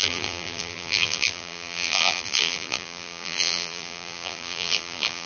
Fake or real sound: fake